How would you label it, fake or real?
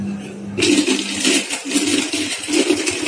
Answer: real